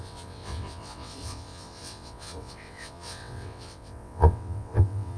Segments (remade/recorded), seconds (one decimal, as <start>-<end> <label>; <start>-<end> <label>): 0.0-5.2 remade